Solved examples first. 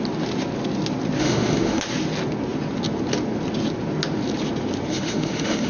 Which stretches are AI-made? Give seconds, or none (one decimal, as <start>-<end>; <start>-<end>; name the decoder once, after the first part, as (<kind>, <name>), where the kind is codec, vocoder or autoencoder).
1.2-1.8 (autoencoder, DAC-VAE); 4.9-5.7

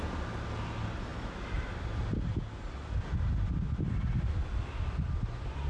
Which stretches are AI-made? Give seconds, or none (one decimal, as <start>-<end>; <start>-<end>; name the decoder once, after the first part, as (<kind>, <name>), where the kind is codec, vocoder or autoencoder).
none

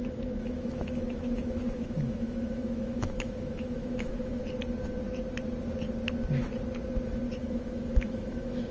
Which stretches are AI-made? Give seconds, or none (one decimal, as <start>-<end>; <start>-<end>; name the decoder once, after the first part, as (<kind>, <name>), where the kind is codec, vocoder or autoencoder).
0.0-4.4 (autoencoder, DAC-VAE); 7.4-8.7